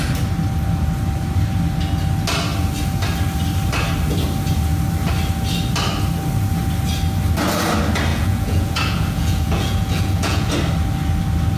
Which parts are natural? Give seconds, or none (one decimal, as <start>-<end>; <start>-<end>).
0.0-8.1; 10.5-11.6